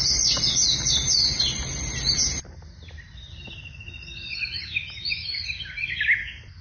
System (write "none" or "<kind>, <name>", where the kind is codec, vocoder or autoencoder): none